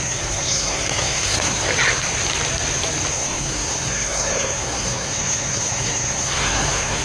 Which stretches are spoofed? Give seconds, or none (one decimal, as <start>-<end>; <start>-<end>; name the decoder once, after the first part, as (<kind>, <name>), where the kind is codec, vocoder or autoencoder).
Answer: 0.0-1.7 (codec, SNAC); 3.1-7.0